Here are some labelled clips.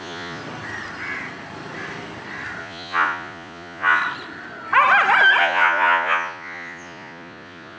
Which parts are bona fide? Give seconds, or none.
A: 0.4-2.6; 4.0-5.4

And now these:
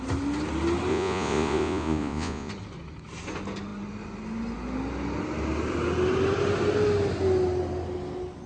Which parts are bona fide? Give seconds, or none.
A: 0.0-0.9; 2.5-8.5

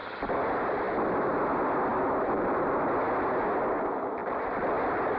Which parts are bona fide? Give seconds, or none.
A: 0.0-5.2

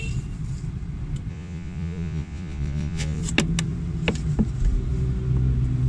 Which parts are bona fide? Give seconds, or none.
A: 0.0-1.3; 3.2-5.9

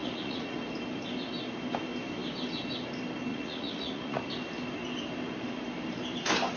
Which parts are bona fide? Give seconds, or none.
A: 0.6-3.3; 4.2-6.6